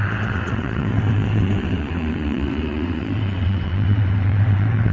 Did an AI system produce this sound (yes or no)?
yes